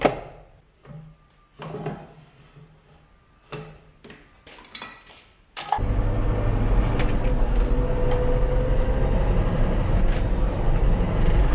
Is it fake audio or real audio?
real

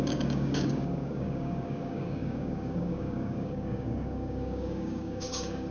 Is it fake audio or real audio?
fake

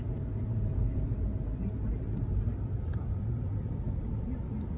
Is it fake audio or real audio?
real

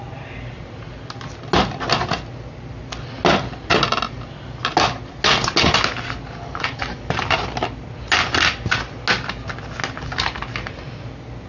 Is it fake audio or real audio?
real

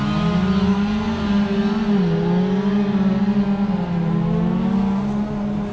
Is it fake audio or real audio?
real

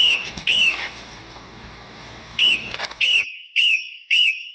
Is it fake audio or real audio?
fake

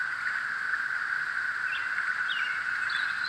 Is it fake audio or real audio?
real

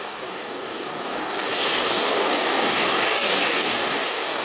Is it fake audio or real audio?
fake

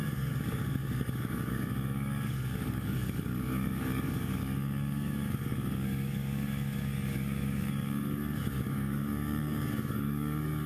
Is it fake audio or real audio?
fake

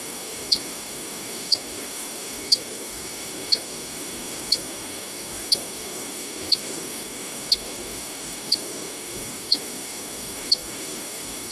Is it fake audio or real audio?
fake